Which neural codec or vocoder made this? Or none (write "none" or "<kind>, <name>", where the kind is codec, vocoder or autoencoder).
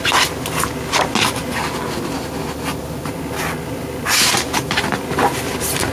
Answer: none